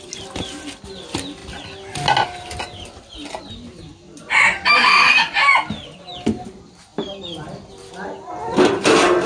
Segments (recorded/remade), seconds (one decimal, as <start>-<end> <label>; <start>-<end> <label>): 0.0-9.3 recorded